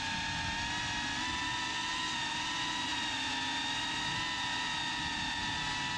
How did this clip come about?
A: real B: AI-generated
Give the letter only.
A